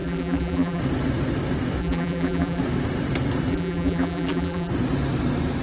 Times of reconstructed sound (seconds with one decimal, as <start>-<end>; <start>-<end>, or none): 0.0-0.8; 1.8-2.6; 3.5-4.7